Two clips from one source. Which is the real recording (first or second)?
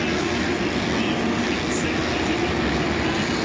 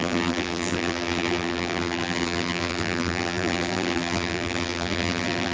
first